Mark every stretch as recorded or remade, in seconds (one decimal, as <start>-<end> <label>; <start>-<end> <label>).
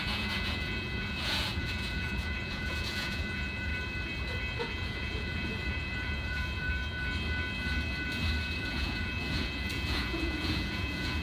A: 0.0-3.7 remade; 3.7-4.6 recorded; 4.6-6.8 remade; 6.8-8.6 recorded; 8.6-11.2 remade